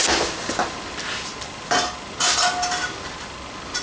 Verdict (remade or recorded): recorded